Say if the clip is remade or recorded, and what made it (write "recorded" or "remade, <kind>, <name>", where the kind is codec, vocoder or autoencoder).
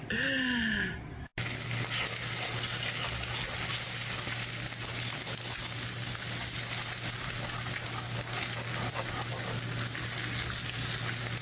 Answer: recorded